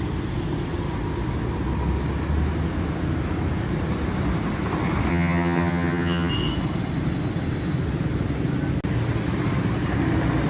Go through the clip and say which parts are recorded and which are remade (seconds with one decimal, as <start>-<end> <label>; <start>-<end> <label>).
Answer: 0.0-5.1 recorded; 5.1-6.3 remade; 6.3-10.5 recorded